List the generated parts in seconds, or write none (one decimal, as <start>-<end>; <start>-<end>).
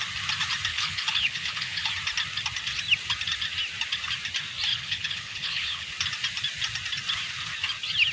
0.7-1.9; 4.7-5.9